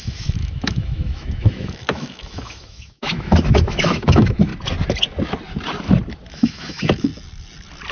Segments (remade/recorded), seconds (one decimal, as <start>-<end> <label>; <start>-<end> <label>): 0.0-4.5 remade; 4.5-6.3 recorded; 6.3-7.1 remade; 7.1-7.9 recorded